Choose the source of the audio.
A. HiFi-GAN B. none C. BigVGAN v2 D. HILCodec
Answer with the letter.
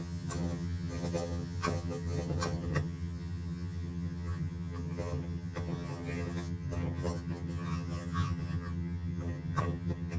A